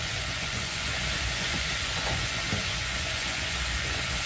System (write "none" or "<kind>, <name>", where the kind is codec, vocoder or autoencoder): vocoder, Vocos